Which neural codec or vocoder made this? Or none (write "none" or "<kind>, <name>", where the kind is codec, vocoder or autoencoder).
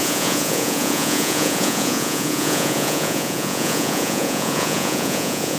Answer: vocoder, Vocos